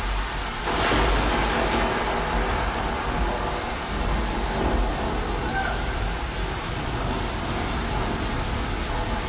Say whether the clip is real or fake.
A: real